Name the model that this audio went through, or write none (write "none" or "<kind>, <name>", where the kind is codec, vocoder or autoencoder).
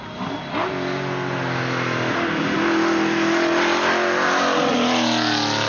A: none